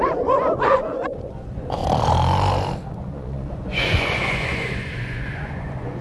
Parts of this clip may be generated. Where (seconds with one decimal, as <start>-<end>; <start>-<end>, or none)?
0.0-1.8; 2.9-6.0